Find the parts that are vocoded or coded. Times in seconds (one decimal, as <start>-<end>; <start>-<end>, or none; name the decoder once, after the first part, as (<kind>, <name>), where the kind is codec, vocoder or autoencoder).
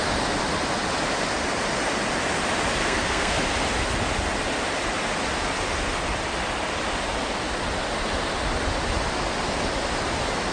2.8-3.4 (codec, SNAC)